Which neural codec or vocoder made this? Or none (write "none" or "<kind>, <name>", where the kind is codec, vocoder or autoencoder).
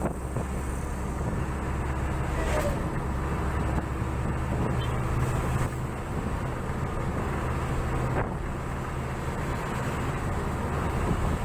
none